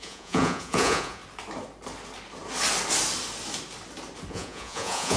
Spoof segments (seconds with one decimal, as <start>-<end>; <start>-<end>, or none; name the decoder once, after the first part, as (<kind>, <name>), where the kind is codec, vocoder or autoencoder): 0.0-1.2 (vocoder, Vocos); 4.3-5.2

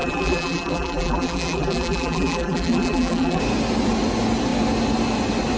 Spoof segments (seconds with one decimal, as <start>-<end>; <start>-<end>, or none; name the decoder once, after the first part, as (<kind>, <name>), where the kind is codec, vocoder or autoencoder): 0.0-3.4 (vocoder, BigVGAN v2)

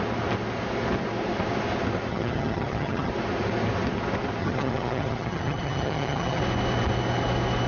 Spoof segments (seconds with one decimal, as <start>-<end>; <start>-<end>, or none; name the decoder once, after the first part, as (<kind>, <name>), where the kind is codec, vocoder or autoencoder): 2.1-3.1 (vocoder, HiFi-GAN); 4.4-6.4